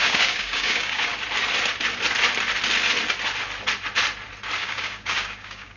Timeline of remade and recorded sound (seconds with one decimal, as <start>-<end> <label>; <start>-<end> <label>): 0.0-1.1 remade; 1.1-4.6 recorded; 4.6-5.8 remade